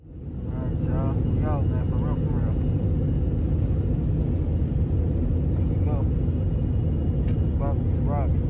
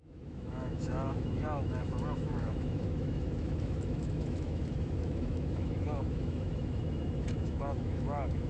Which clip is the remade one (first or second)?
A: second